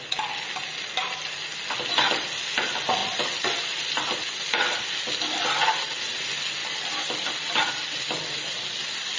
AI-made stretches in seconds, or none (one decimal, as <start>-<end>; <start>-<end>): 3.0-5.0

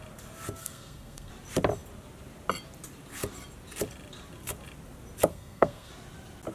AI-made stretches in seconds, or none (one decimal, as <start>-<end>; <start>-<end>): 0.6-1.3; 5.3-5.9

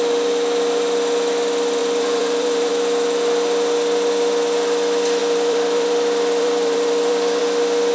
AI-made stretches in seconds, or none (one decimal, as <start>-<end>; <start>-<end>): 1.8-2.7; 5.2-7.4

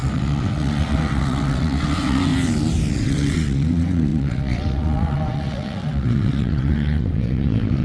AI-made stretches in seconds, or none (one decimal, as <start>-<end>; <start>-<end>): 0.0-2.3; 2.9-7.8

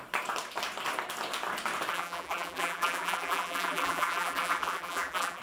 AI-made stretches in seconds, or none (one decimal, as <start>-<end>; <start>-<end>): 1.9-5.4